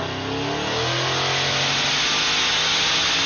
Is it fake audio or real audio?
real